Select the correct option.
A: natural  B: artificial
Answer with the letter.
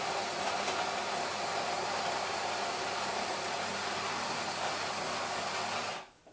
A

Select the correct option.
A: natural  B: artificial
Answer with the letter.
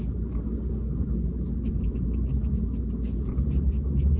A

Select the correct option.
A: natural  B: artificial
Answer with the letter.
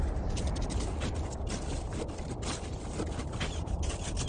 A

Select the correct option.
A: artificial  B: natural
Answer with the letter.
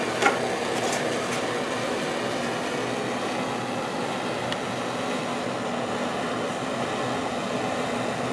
B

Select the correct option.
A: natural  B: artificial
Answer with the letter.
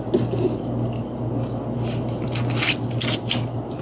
A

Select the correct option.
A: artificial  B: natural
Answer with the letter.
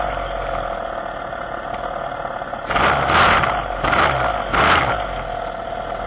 B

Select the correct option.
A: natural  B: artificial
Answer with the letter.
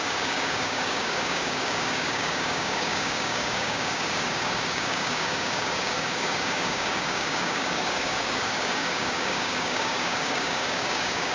B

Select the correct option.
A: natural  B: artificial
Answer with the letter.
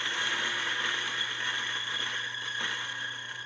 A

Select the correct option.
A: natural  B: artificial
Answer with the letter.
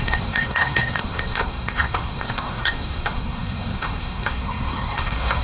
B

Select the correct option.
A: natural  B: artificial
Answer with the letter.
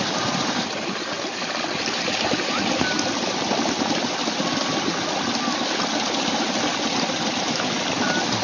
A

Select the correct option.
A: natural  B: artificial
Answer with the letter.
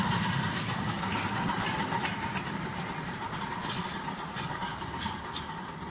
A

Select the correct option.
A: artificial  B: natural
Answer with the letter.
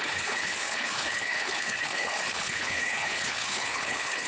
A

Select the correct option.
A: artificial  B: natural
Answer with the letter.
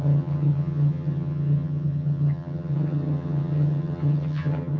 A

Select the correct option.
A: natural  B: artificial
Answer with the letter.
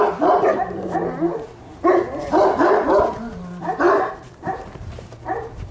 B